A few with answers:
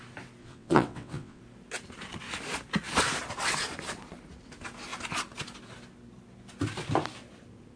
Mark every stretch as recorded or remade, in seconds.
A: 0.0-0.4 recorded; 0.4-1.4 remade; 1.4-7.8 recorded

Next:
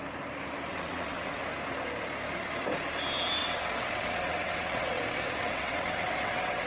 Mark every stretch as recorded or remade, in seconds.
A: 0.0-0.7 recorded; 0.7-1.4 remade; 1.4-3.4 recorded; 3.4-6.7 remade